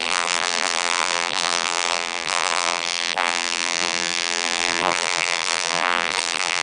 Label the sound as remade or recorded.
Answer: remade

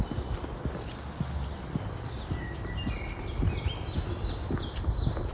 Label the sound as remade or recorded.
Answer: recorded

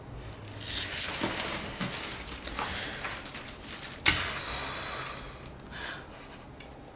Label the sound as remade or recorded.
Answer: recorded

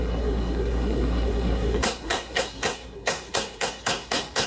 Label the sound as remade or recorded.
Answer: remade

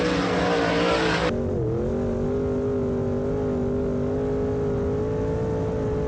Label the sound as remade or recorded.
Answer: recorded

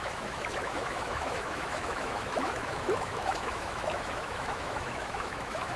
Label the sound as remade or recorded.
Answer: remade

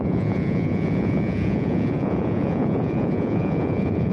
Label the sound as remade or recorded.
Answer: remade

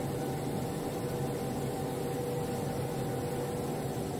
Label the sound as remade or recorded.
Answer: recorded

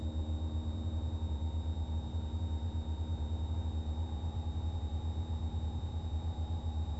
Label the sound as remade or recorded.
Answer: remade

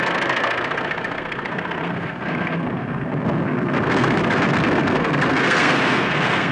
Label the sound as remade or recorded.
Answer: remade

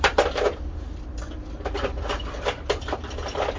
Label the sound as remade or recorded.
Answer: recorded